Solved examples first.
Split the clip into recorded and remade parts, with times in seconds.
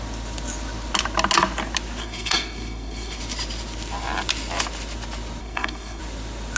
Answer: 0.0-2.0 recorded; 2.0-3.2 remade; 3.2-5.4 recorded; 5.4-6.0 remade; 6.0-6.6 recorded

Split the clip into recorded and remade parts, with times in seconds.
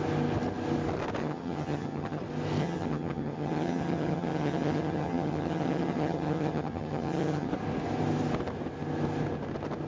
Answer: 0.0-1.2 recorded; 1.2-2.2 remade; 2.2-2.6 recorded; 2.6-7.5 remade; 7.5-9.9 recorded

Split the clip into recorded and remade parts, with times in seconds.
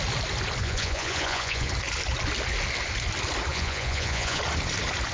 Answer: 0.0-0.6 recorded; 0.6-1.7 remade; 1.7-3.5 recorded; 3.5-4.4 remade; 4.4-5.1 recorded